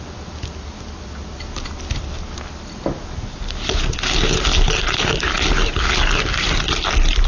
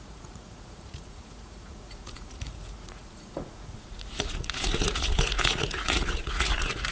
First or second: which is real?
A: first